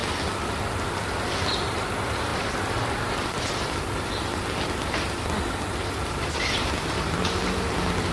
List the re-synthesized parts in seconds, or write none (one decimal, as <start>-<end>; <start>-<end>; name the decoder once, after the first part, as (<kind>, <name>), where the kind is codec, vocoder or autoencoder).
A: none

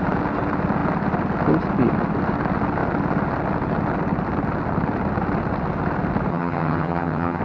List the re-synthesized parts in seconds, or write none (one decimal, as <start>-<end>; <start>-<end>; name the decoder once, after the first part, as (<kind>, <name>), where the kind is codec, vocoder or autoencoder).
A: 6.3-7.4 (vocoder, HiFi-GAN)

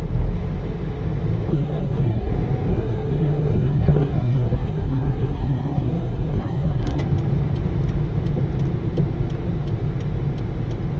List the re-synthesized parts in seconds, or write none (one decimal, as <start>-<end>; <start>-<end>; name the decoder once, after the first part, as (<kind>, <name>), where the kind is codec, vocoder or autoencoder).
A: 1.5-2.3 (codec, SNAC); 2.7-7.0

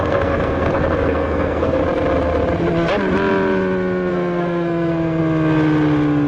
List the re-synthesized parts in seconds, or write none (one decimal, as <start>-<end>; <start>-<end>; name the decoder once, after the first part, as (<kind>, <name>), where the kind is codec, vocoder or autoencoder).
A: 0.0-1.8 (codec, SNAC); 4.1-5.2

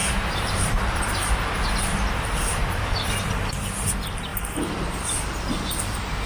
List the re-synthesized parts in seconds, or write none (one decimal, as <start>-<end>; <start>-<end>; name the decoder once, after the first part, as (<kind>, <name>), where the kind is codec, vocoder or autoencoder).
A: 0.0-1.4 (vocoder, BigVGAN v2); 1.9-3.2

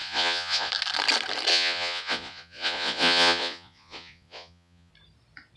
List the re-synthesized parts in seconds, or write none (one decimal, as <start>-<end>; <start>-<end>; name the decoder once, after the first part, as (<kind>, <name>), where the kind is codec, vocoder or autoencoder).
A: 0.0-0.7 (vocoder, Vocos); 1.5-4.9